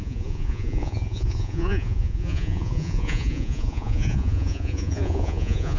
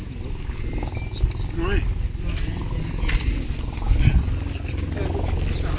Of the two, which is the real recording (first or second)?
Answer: second